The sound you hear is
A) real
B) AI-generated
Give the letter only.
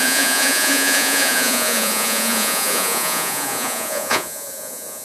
B